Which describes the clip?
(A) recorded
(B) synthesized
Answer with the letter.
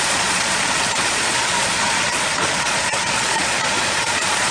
B